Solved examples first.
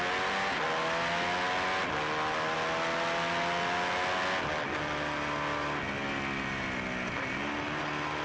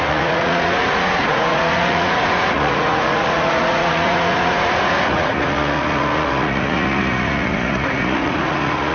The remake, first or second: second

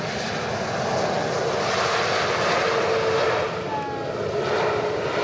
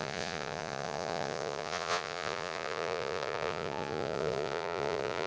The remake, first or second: second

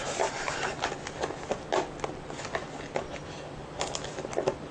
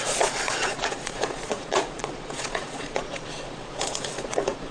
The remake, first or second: second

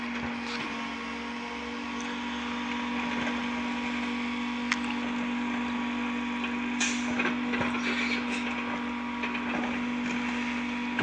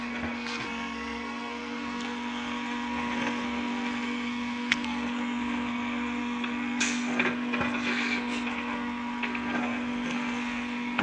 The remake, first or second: second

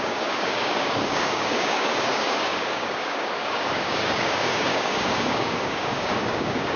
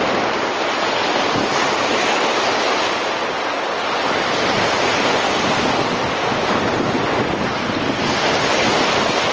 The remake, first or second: first